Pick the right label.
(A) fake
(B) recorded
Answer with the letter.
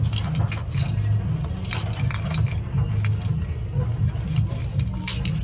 B